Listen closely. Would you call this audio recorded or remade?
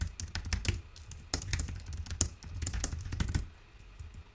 recorded